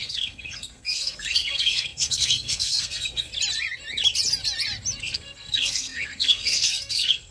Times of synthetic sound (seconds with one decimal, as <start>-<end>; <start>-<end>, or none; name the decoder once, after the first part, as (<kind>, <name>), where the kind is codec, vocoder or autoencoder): 0.0-3.3 (codec, SNAC); 5.0-7.3